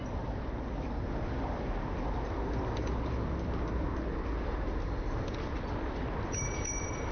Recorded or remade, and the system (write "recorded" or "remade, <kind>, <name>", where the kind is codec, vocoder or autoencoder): recorded